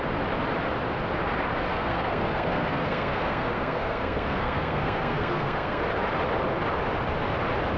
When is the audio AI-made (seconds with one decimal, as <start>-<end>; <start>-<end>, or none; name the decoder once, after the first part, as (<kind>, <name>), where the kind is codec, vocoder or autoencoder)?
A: 1.7-5.8 (codec, SNAC)